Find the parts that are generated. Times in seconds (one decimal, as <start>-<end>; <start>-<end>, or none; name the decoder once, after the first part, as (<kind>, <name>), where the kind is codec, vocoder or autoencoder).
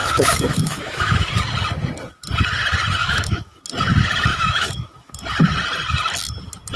0.0-1.3 (autoencoder, DAC-VAE); 3.0-3.6; 4.3-5.1